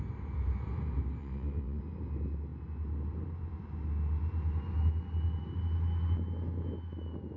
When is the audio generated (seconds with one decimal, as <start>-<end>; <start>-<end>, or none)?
1.2-1.8